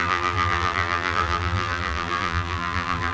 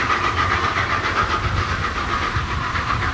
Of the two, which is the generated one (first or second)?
first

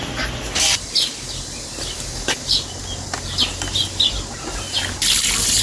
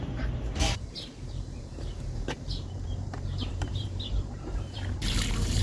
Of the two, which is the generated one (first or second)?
second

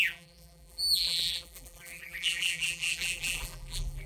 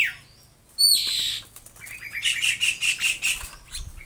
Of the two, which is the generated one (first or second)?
first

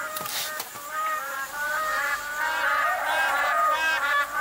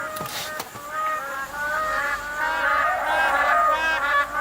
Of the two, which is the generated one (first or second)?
first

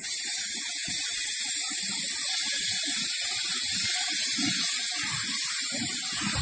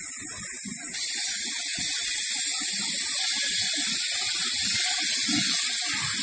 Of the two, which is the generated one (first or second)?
first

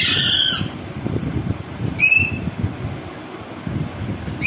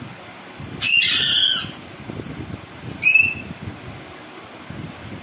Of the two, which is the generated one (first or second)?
first